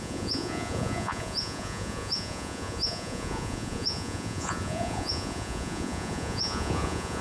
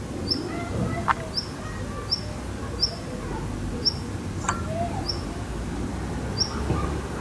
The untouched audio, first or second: second